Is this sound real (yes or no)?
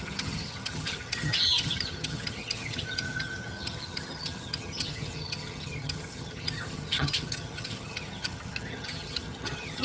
no